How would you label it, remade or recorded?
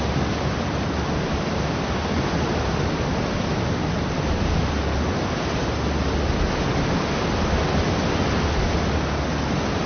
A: recorded